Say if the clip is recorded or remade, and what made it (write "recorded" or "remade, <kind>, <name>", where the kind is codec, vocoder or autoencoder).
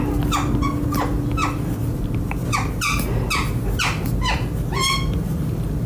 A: recorded